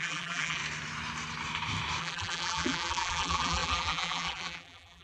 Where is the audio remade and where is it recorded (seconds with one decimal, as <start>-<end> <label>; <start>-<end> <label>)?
0.0-0.6 remade; 0.6-2.0 recorded; 2.0-5.0 remade